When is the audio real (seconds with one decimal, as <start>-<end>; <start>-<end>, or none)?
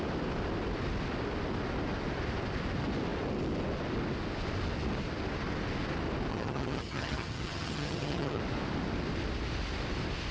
0.0-6.3; 8.4-10.3